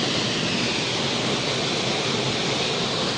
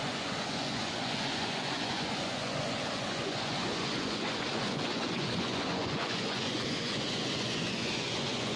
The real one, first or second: first